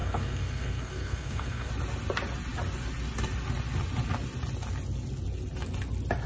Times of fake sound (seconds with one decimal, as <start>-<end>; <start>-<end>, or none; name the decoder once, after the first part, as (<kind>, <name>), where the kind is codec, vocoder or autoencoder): 0.0-1.7 (codec, SNAC)